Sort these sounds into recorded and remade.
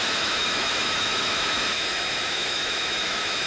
remade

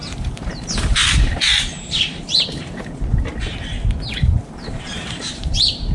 remade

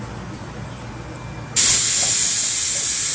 recorded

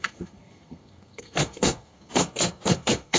remade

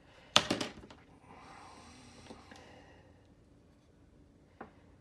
remade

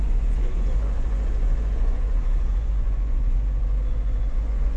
remade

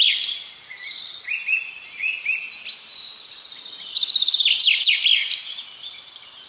remade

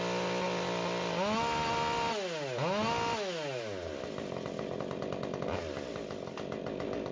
recorded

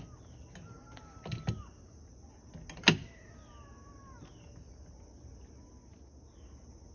recorded